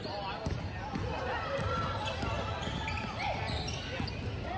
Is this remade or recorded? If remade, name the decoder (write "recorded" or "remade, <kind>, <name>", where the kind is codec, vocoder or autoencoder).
recorded